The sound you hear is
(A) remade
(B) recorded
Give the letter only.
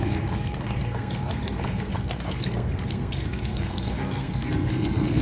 A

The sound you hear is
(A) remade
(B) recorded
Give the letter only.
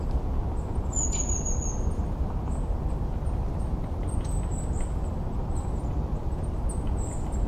B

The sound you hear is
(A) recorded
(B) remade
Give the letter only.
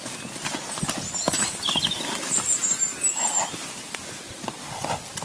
A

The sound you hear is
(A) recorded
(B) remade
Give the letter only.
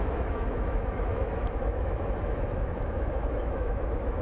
B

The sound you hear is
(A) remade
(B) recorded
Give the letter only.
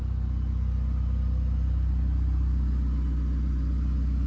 B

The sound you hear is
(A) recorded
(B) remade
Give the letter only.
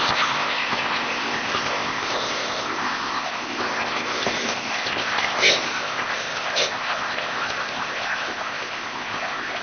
B